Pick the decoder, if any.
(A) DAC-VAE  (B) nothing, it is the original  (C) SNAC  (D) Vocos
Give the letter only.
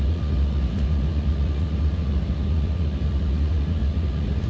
D